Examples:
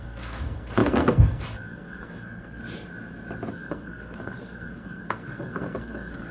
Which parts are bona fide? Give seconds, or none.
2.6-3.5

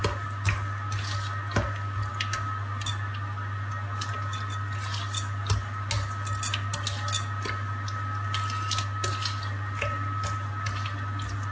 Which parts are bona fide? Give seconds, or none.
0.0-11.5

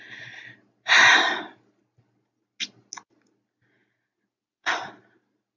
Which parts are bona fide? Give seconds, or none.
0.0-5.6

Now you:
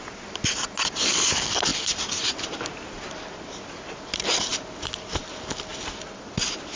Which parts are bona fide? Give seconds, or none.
0.0-6.8

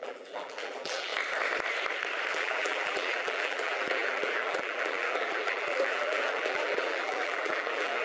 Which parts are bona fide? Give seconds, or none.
1.1-2.3

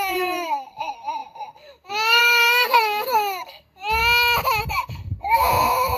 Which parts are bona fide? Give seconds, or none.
4.0-4.6

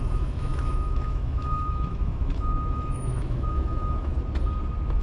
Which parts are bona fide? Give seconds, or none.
4.1-5.0

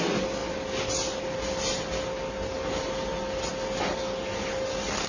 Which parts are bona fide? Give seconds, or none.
0.0-5.1